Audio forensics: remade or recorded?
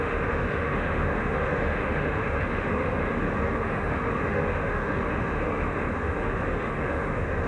remade